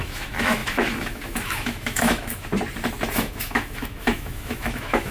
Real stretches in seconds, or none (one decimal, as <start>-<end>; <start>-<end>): 2.5-3.1